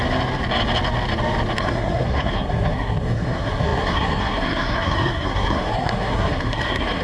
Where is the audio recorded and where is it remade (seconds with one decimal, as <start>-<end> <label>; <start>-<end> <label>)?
0.0-1.6 recorded; 1.6-7.0 remade